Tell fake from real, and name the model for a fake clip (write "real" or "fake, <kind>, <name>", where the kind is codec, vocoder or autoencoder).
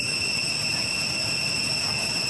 real